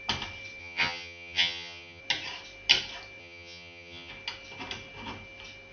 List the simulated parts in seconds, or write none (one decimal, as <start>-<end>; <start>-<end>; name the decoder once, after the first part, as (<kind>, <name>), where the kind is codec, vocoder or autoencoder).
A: 0.6-2.0 (vocoder, HiFi-GAN); 3.2-4.1